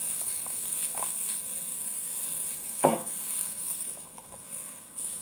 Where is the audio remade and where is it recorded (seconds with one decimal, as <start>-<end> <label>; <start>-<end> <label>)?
0.0-5.2 remade